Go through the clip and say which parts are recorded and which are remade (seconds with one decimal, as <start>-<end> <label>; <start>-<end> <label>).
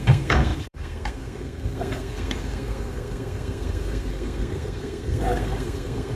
0.0-6.2 remade